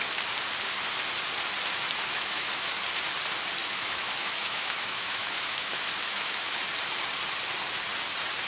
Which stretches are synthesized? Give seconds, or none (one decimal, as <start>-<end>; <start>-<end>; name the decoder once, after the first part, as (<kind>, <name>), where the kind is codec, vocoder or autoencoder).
2.1-2.8 (autoencoder, DAC-VAE); 3.6-6.6